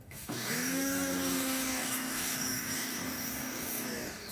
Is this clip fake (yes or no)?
yes